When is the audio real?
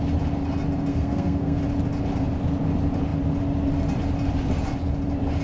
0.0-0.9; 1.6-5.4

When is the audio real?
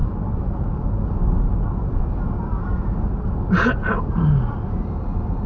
0.0-5.5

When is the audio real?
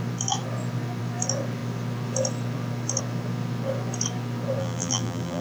0.0-4.6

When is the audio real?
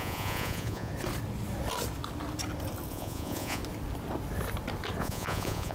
0.9-2.9; 3.6-5.0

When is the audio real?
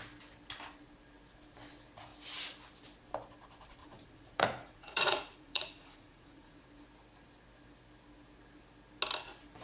0.0-3.8; 6.6-9.6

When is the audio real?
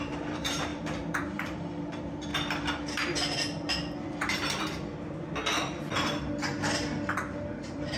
2.3-7.1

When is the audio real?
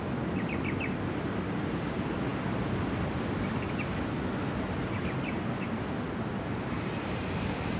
0.0-7.8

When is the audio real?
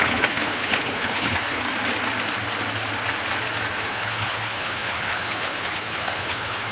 1.6-3.8